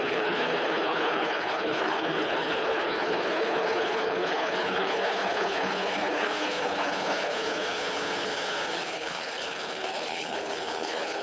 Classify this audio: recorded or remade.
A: remade